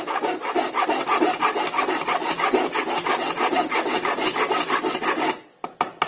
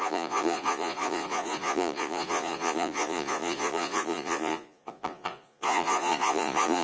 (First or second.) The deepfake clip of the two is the second